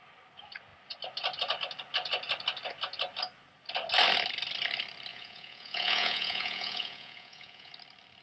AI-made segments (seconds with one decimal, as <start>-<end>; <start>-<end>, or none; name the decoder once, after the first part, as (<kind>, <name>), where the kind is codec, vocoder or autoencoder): 5.1-7.7 (vocoder, Vocos)